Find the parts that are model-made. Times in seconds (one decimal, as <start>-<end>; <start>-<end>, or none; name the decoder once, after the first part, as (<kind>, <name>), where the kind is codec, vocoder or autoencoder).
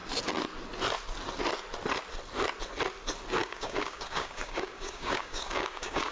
3.4-6.1 (codec, DAC)